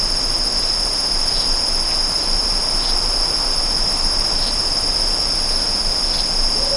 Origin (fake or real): real